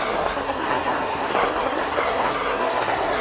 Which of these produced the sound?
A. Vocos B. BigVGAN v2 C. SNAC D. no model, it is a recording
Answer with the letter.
C